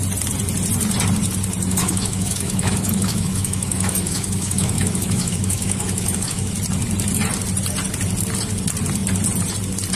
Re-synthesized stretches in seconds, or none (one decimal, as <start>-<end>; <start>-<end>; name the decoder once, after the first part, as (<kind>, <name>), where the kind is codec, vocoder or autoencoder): 1.8-6.5 (autoencoder, DAC-VAE)